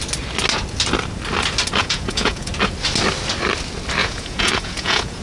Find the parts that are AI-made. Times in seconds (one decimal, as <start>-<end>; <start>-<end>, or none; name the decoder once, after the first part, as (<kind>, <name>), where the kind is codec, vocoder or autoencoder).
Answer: 1.8-2.5 (vocoder, Vocos); 4.0-5.2